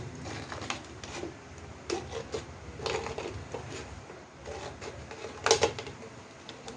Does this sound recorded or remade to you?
recorded